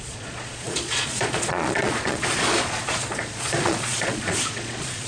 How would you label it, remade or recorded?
remade